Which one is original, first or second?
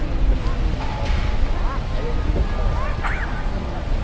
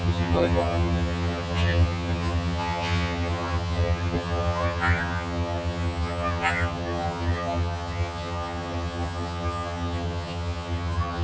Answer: first